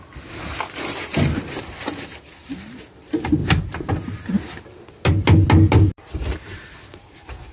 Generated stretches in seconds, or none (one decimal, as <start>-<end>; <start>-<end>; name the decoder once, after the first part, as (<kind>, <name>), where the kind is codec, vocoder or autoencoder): none